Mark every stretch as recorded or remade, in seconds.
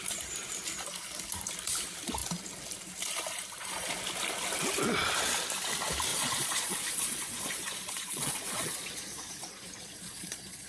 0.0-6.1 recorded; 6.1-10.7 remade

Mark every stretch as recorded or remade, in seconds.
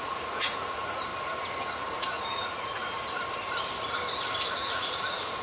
0.0-1.1 remade; 1.1-1.7 recorded; 1.7-2.8 remade; 2.8-4.5 recorded; 4.5-5.4 remade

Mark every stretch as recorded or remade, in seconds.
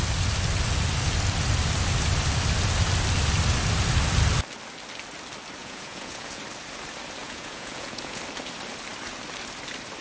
0.0-5.6 recorded; 5.6-6.4 remade; 6.4-7.2 recorded; 7.2-8.2 remade; 8.2-10.0 recorded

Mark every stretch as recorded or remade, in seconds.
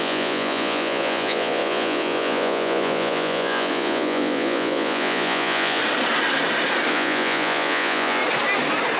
0.0-5.8 remade; 5.8-6.9 recorded; 6.9-8.2 remade; 8.2-9.0 recorded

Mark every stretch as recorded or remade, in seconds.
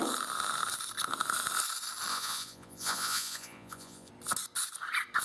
0.0-2.1 recorded; 2.1-4.1 remade; 4.1-5.2 recorded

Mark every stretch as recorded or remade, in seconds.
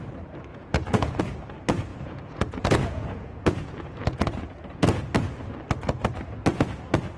0.0-0.5 recorded; 0.5-1.2 remade; 1.2-1.9 recorded; 1.9-5.0 remade; 5.0-7.2 recorded